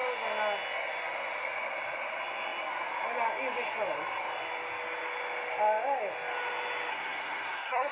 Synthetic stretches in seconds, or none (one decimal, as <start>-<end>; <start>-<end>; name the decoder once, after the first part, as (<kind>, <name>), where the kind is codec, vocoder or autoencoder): 6.9-7.9 (codec, SNAC)